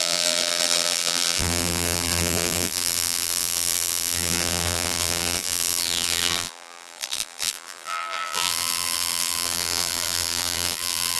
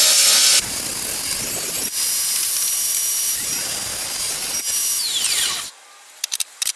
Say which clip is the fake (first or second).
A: first